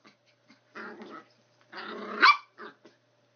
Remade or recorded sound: recorded